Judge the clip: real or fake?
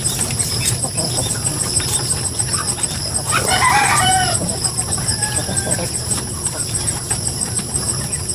fake